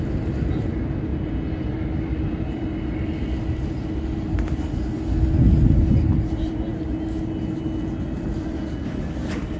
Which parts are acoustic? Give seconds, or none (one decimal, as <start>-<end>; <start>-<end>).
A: 0.0-9.6